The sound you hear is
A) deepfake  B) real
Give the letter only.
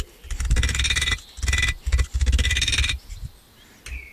B